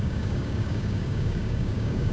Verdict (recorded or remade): remade